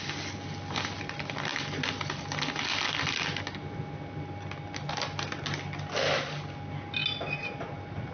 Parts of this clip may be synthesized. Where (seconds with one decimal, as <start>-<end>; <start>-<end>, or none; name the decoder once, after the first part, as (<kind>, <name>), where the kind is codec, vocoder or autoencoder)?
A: none